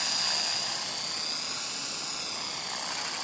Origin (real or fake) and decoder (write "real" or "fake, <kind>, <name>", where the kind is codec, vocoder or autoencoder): real